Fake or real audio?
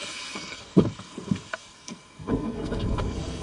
fake